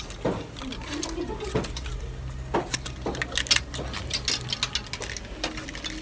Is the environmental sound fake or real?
real